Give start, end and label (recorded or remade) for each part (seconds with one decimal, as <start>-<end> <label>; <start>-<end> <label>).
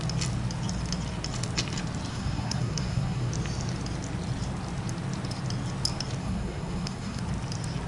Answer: 0.0-2.1 recorded; 2.1-3.3 remade; 3.3-6.2 recorded; 6.2-7.2 remade; 7.2-7.9 recorded